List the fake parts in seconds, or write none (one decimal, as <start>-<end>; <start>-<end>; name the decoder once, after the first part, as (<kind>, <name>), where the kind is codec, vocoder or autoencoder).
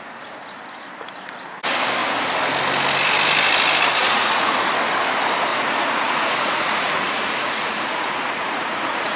4.0-4.7 (vocoder, Vocos); 5.5-9.2